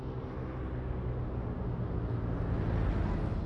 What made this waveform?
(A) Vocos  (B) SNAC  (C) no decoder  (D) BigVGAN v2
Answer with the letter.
C